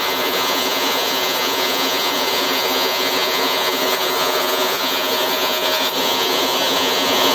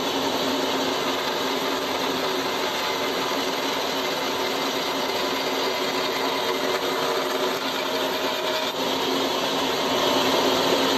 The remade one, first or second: first